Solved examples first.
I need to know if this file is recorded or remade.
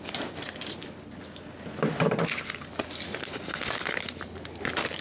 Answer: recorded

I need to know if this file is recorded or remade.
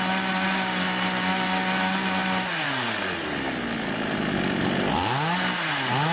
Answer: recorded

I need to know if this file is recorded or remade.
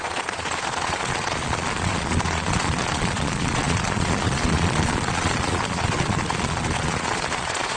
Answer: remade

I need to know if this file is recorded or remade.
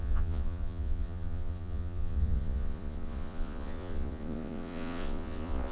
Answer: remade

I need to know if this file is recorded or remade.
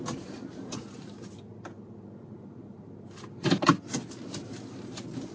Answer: recorded